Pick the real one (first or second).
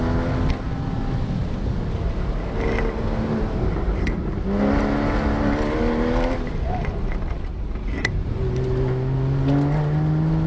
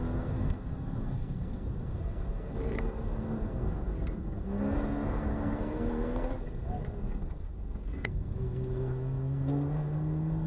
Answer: first